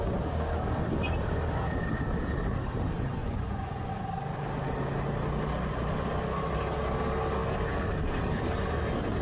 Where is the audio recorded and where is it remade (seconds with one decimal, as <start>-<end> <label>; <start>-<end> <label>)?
0.0-3.2 recorded; 3.2-3.9 remade; 3.9-9.2 recorded